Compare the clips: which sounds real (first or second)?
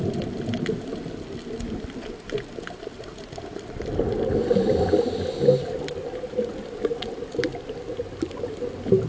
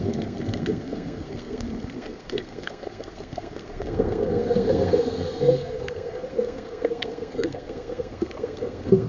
first